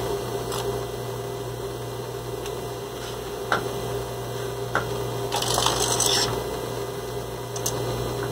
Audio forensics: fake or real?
real